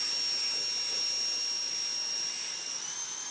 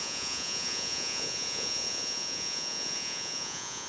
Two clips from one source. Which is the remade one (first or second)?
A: second